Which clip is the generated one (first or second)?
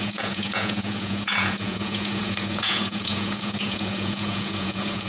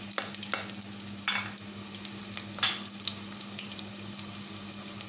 first